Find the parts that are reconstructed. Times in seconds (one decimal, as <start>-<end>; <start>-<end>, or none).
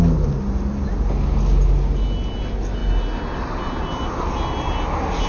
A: none